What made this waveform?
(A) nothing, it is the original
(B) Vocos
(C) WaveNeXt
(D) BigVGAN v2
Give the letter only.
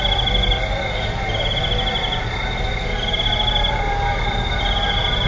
A